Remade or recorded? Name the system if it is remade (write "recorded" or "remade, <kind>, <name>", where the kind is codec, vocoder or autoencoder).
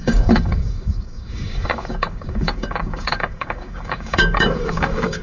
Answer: remade, codec, DAC